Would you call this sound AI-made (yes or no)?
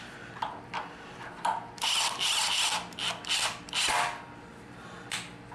no